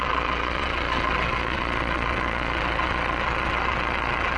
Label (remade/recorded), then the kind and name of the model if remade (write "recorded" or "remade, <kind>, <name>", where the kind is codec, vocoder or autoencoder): remade, vocoder, Vocos